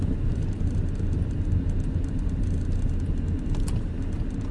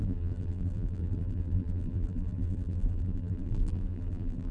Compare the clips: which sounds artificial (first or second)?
second